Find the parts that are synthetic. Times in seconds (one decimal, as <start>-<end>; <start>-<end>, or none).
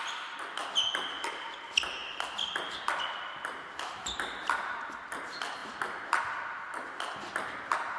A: none